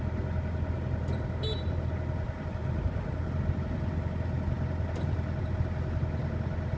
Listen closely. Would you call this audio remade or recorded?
recorded